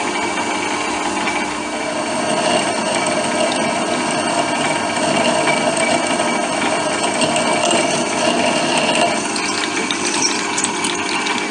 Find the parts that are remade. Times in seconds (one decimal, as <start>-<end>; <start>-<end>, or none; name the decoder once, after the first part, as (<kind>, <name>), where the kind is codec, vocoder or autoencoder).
none